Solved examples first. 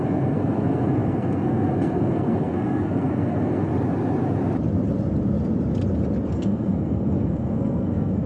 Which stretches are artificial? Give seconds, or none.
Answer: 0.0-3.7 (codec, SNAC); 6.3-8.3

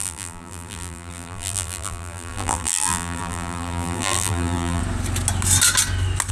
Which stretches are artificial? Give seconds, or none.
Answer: 0.0-4.8 (vocoder, BigVGAN v2)

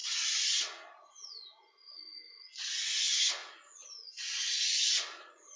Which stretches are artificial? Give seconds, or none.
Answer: 0.0-5.6 (vocoder, Vocos)

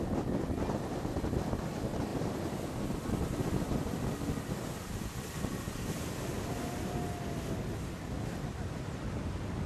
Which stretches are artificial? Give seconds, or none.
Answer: none

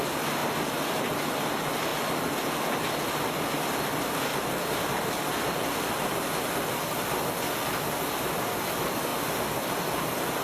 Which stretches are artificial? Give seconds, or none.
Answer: none

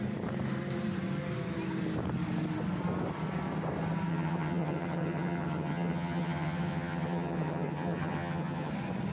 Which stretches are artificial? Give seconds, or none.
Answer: 4.1-8.7 (vocoder, HiFi-GAN)

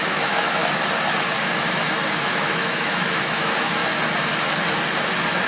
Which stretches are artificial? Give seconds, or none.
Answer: 0.0-0.6 (autoencoder, DAC-VAE); 2.2-3.8